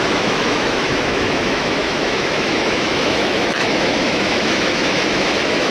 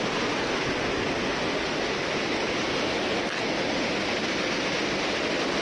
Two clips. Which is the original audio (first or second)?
second